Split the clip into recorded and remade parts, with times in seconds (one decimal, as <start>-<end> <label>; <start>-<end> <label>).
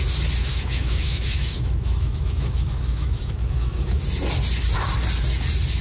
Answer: 0.0-0.5 recorded; 0.5-4.0 remade; 4.0-5.8 recorded